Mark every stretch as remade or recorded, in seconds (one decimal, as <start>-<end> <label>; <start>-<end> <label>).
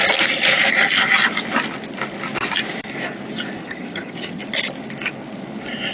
0.0-3.6 recorded; 3.6-4.4 remade; 4.4-5.9 recorded